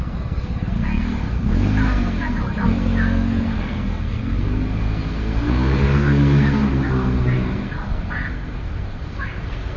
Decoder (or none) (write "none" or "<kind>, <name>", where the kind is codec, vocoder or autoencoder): codec, SNAC